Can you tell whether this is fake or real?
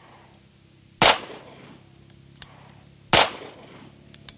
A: real